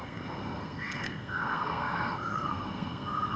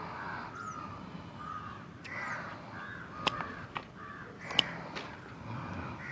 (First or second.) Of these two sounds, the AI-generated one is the first